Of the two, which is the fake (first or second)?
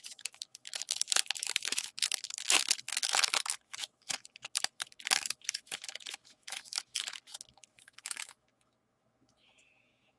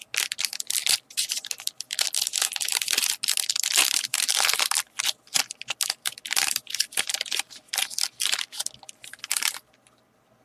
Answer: first